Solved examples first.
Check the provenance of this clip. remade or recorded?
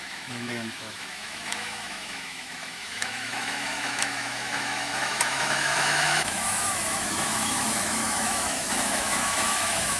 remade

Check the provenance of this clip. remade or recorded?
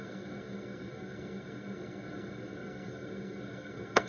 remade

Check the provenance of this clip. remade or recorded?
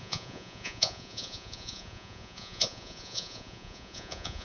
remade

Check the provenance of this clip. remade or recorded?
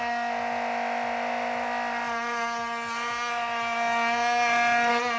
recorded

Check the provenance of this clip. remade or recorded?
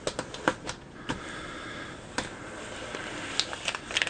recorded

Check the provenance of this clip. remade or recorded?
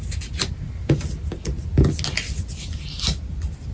recorded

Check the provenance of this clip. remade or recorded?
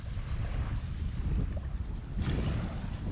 recorded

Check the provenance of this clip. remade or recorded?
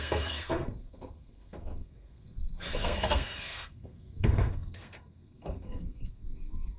remade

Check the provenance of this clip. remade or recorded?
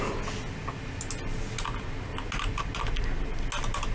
recorded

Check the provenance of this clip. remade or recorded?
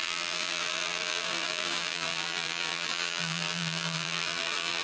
remade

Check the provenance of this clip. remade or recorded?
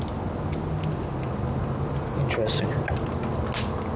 recorded